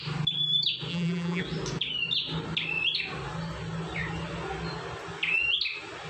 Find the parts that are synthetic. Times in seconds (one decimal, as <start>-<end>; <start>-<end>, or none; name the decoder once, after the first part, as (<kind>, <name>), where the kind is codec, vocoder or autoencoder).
0.9-1.4 (vocoder, BigVGAN v2)

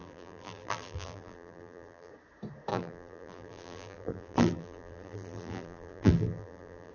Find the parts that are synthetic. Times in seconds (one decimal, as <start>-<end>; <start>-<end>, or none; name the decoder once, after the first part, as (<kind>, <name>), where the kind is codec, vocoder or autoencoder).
0.0-2.1 (vocoder, BigVGAN v2); 2.7-6.9

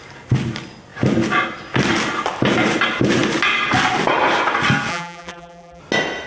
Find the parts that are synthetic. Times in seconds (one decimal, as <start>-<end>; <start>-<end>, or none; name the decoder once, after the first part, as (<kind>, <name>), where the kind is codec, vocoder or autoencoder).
4.9-5.8 (vocoder, BigVGAN v2)

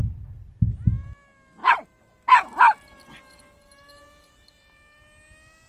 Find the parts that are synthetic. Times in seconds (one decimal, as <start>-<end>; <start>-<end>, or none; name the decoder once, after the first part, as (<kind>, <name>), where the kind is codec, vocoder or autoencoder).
none

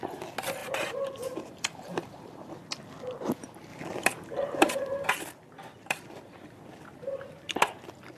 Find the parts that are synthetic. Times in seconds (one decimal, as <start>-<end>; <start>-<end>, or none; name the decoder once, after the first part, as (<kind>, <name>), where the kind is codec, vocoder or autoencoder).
0.6-2.5 (vocoder, BigVGAN v2); 3.7-5.1; 5.8-6.6

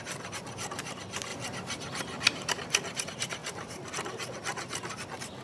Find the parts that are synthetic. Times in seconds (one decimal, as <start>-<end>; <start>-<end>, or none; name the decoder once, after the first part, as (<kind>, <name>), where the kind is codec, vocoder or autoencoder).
1.3-2.5 (vocoder, BigVGAN v2); 3.4-3.9; 4.5-5.0

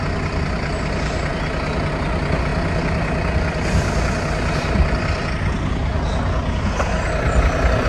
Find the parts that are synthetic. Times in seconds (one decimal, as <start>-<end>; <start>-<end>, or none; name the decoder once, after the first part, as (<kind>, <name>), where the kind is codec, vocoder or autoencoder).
none